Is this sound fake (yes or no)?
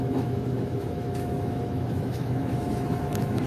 yes